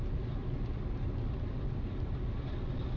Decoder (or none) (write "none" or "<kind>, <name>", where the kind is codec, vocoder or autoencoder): none